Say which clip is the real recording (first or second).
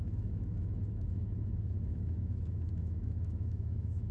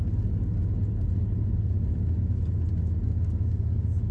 second